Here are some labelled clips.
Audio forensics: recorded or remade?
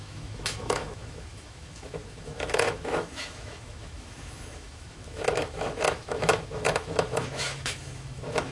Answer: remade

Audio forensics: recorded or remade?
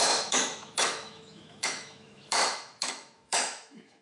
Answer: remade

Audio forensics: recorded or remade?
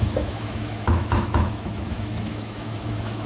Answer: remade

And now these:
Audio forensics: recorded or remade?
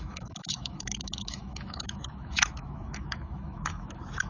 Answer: remade